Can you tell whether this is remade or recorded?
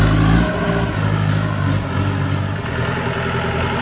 recorded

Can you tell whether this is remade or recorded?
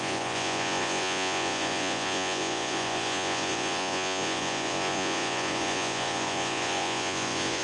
remade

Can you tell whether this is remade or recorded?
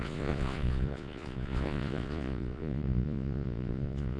remade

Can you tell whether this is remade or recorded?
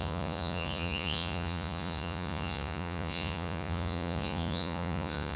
remade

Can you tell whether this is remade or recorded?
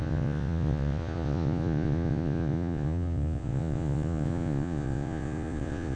remade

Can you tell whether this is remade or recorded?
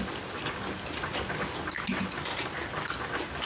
recorded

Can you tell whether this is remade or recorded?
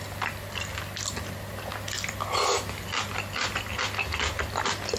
recorded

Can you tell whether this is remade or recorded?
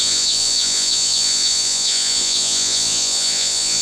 remade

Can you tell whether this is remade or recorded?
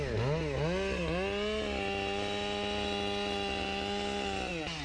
recorded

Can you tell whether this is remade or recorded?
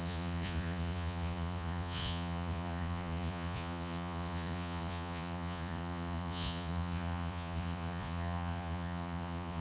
remade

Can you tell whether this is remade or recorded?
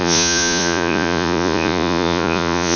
remade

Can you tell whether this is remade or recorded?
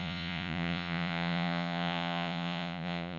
remade